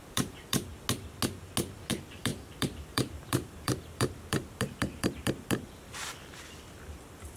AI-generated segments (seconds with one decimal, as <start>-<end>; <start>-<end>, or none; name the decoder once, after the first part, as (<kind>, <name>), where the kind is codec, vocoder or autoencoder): 0.0-0.7 (vocoder, BigVGAN v2); 1.9-7.4